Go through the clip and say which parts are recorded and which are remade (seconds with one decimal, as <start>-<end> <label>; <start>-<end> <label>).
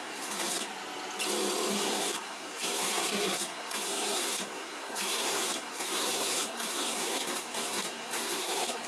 0.0-0.7 remade; 0.7-1.7 recorded; 1.7-8.9 remade